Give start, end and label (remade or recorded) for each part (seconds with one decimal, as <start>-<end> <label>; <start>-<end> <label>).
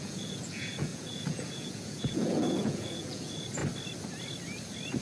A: 0.0-3.6 remade; 3.6-5.0 recorded